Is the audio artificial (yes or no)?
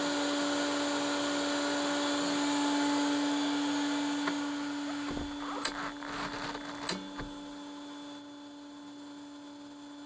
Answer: no